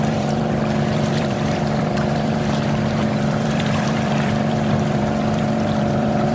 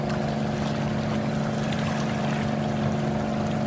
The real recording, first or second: second